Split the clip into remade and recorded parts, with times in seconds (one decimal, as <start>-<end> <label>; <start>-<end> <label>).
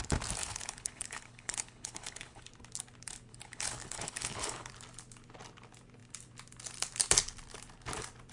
0.0-0.4 recorded; 0.4-2.5 remade; 2.5-3.3 recorded; 3.3-4.7 remade; 4.7-8.3 recorded